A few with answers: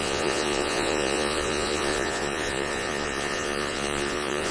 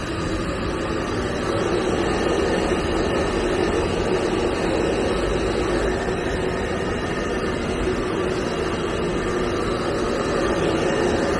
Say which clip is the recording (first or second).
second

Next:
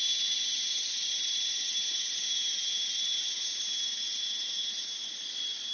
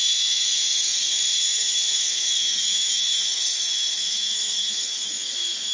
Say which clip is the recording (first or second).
first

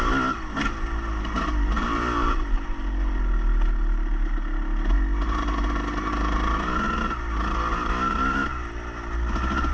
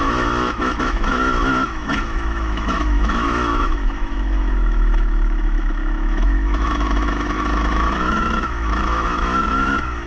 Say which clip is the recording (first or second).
first